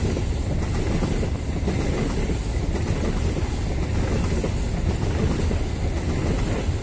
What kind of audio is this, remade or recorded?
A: recorded